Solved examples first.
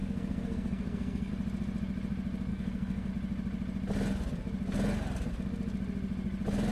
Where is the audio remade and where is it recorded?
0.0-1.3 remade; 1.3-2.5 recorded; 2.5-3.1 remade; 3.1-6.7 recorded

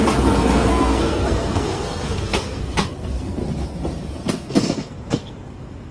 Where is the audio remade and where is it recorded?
0.0-3.4 remade; 3.4-4.3 recorded; 4.3-5.9 remade

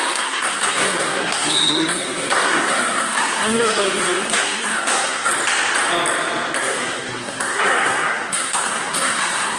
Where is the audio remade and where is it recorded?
0.0-5.3 remade; 5.3-6.6 recorded; 6.6-9.6 remade

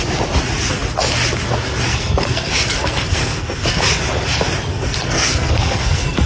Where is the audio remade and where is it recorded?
0.0-1.9 recorded; 1.9-3.8 remade; 3.8-4.7 recorded; 4.7-6.3 remade

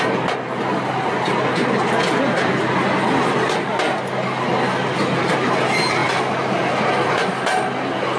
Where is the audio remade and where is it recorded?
0.0-8.2 recorded

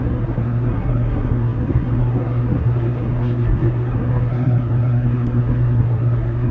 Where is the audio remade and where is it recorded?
0.0-6.5 remade